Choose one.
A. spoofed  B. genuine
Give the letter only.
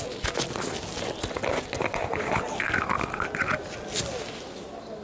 B